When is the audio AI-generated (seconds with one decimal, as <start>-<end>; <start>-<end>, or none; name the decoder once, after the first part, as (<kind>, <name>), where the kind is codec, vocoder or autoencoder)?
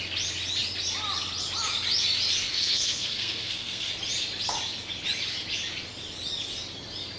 2.5-3.9 (codec, SNAC)